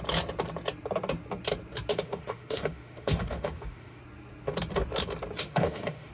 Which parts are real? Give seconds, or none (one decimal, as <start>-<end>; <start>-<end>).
0.0-1.9; 4.0-5.4